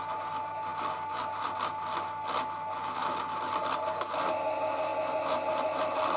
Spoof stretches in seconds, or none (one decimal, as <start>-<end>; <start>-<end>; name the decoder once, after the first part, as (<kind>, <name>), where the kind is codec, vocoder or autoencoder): none